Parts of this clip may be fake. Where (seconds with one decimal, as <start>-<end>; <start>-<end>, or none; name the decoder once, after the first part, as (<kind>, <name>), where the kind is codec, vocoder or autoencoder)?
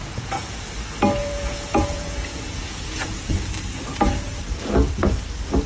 0.0-0.6 (vocoder, Vocos); 1.2-3.3; 3.9-4.4